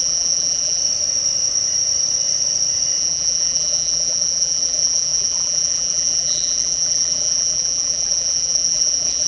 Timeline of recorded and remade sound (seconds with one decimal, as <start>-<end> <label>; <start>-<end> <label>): 0.0-0.8 remade; 0.8-3.0 recorded; 3.0-9.3 remade